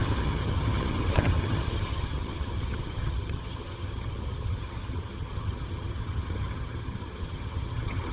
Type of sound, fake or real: fake